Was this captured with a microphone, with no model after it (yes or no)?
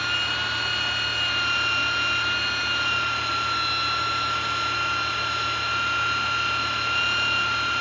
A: yes